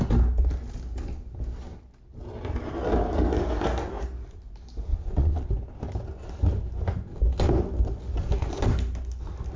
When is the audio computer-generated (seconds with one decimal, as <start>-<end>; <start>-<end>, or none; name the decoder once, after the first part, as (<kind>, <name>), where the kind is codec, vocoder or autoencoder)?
4.9-5.5 (vocoder, Vocos)